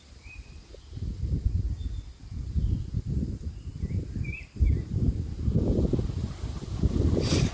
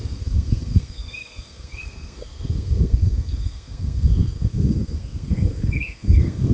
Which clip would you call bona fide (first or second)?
first